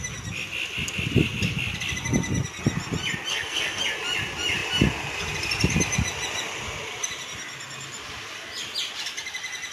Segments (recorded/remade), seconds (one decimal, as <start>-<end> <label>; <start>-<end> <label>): 0.0-3.3 recorded; 3.3-3.8 remade; 3.8-9.7 recorded